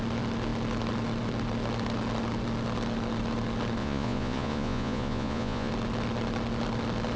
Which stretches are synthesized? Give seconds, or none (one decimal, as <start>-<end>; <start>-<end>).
3.8-5.7